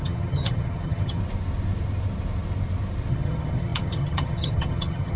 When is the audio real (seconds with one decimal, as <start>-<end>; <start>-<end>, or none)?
1.2-3.1